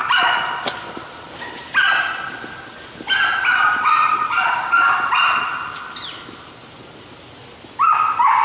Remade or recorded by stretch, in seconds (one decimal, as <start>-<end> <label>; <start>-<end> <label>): 0.0-8.4 recorded